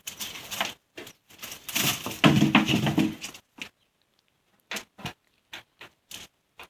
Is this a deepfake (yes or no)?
no